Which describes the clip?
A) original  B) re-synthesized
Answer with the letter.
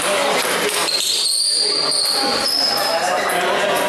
A